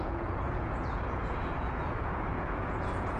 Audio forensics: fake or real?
fake